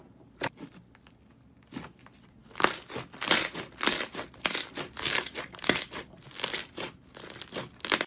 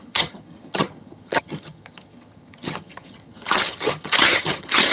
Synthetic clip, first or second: second